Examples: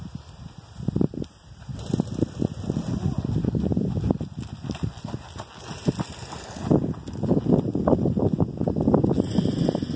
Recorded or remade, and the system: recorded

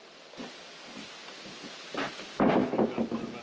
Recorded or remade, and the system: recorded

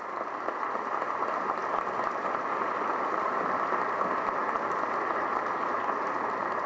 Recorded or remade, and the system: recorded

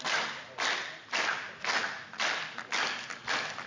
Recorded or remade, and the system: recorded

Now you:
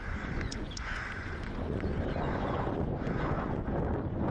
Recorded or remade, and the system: remade, vocoder, Vocos